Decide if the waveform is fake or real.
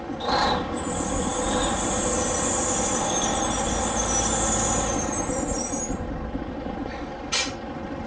real